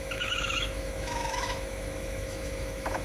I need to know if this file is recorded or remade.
remade